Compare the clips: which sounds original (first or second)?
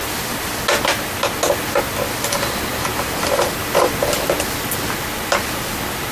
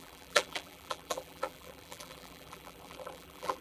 first